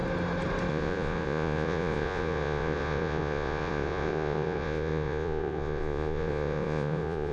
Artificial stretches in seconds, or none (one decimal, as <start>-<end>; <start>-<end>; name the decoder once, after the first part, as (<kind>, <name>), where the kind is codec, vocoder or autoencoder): 0.7-7.3 (vocoder, Vocos)